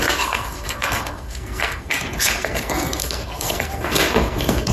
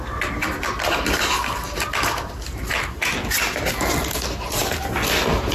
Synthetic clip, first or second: first